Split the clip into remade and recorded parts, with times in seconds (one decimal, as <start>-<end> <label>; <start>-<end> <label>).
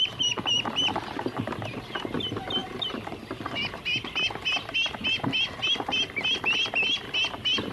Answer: 0.0-7.7 recorded